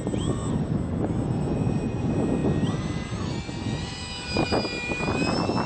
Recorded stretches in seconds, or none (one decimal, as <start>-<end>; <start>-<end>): 0.0-5.7

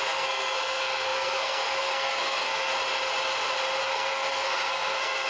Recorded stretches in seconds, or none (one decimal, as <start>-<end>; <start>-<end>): 2.7-3.8